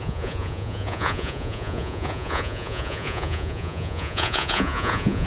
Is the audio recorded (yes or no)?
no